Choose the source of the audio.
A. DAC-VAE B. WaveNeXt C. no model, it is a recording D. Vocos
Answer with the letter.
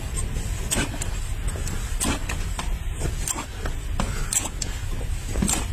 C